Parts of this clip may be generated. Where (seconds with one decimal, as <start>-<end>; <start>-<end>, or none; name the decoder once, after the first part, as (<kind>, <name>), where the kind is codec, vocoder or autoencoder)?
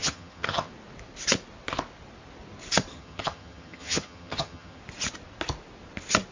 0.0-0.7 (vocoder, HiFi-GAN); 2.9-4.8